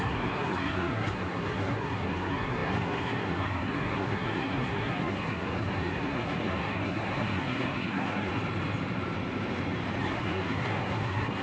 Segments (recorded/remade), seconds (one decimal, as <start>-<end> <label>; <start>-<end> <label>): 0.0-8.3 remade; 8.3-10.0 recorded; 10.0-11.4 remade